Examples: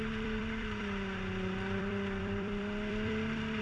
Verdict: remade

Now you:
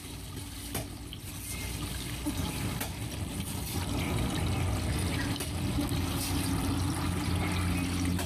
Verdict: recorded